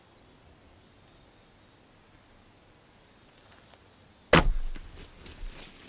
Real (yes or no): yes